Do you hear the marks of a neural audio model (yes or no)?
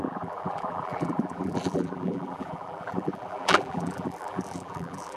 yes